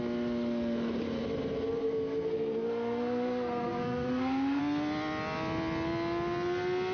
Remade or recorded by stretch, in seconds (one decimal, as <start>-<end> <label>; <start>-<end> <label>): 0.0-1.8 recorded; 1.8-4.6 remade; 4.6-6.9 recorded